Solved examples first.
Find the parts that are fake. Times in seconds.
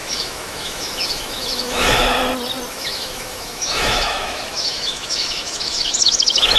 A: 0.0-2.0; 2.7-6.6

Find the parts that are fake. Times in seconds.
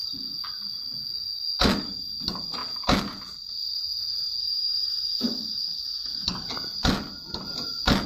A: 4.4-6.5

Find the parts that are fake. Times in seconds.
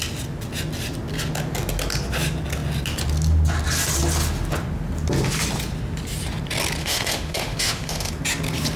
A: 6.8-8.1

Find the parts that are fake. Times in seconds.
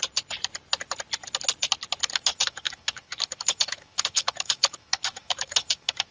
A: 2.3-6.1